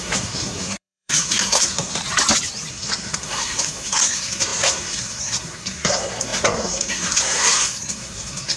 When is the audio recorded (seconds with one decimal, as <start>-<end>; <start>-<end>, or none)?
2.0-2.7